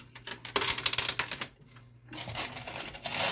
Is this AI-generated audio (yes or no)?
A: no